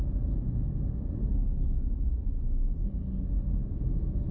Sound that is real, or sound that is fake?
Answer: real